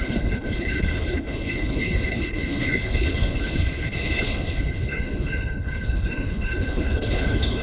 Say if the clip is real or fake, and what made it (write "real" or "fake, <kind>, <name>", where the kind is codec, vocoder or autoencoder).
fake, codec, HILCodec